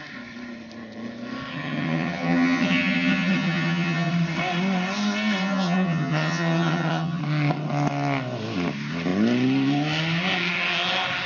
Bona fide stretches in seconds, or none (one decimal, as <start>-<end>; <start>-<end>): 0.0-1.5; 4.1-5.4; 7.2-11.3